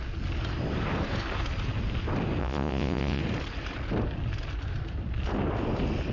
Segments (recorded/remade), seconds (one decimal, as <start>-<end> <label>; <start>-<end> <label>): 0.0-2.4 recorded; 2.4-3.2 remade; 3.2-6.1 recorded